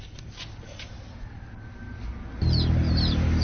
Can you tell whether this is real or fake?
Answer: real